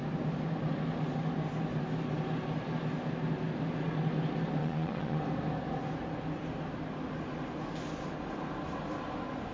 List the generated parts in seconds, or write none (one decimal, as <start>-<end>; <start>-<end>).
4.6-5.2